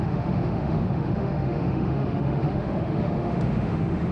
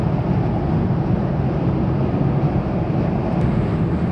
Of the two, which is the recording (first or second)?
second